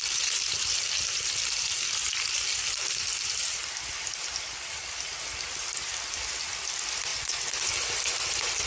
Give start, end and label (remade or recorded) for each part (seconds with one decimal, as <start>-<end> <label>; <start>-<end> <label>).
0.0-8.7 recorded